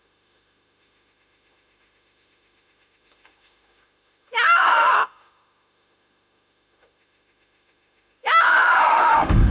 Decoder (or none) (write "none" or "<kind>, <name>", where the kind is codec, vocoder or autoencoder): autoencoder, DAC-VAE